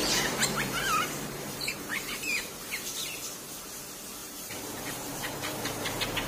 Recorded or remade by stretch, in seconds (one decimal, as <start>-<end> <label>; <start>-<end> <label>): 0.0-2.9 remade; 2.9-4.2 recorded; 4.2-5.4 remade; 5.4-6.3 recorded